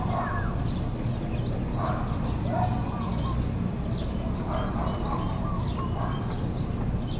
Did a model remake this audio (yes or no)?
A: no